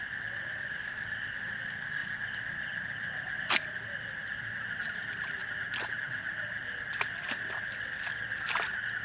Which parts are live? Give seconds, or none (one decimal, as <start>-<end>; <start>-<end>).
0.0-9.0